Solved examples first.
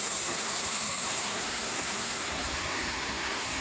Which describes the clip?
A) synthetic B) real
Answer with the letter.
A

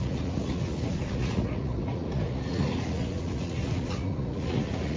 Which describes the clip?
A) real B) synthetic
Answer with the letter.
B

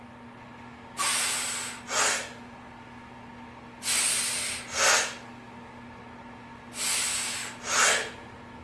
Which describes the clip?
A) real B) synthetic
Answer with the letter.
A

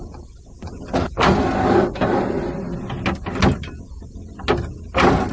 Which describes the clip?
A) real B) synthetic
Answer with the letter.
A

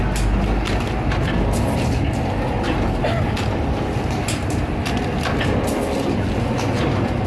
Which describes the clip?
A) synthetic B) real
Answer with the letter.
B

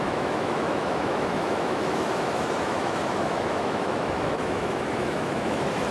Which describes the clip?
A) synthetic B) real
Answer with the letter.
A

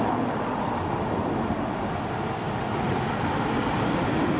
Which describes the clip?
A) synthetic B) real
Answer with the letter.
B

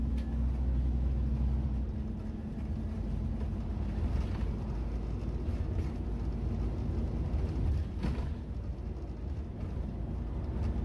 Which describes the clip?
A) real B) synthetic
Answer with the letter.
A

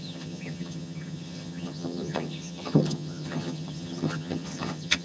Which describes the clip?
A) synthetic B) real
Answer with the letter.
A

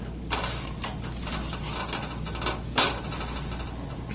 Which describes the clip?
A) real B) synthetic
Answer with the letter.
A